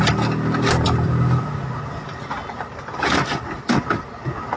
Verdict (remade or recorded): recorded